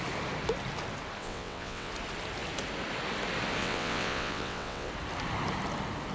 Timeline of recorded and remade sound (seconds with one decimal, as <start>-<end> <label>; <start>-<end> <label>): 0.0-1.2 recorded; 1.2-1.9 remade; 1.9-3.6 recorded; 3.6-4.9 remade; 4.9-6.1 recorded